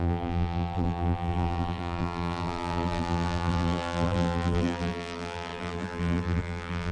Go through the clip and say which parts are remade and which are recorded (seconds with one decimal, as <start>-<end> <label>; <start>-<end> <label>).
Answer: 0.0-6.9 remade